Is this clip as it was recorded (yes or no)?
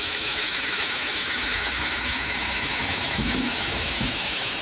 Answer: no